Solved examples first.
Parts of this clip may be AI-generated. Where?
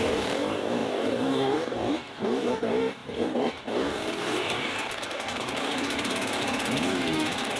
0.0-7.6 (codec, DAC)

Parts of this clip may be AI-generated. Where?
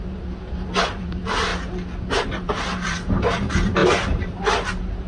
0.0-1.5 (vocoder, BigVGAN v2); 2.1-5.1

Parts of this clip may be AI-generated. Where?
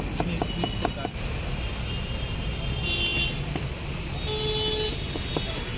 none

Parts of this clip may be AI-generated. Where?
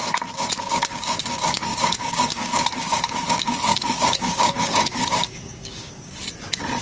0.6-6.2 (codec, DAC)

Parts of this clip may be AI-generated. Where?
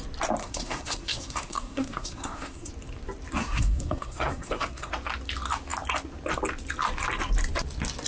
0.4-2.7 (codec, SNAC); 3.4-4.9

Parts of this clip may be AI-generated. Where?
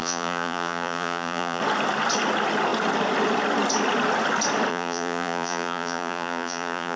0.0-1.6 (vocoder, Vocos); 4.7-7.0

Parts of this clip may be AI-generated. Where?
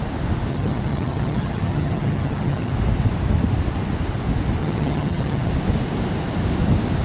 0.5-2.7 (vocoder, HiFi-GAN); 4.6-5.5